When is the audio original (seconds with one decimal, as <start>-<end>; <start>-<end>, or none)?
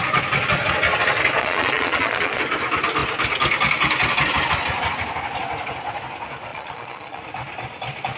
0.0-1.4; 2.4-6.5; 7.2-8.2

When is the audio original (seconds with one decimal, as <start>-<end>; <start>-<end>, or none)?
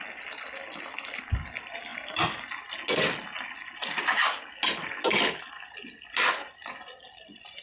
0.0-7.6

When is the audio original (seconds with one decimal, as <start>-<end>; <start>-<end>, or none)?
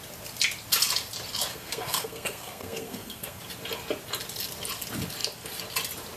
0.0-1.5; 3.4-6.2